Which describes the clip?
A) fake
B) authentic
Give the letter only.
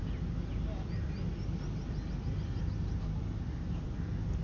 B